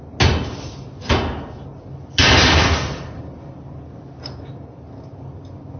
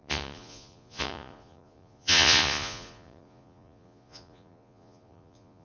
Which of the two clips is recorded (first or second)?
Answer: first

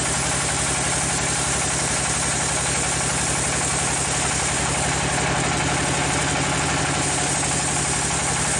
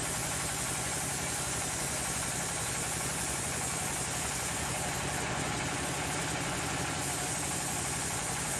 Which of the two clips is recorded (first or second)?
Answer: first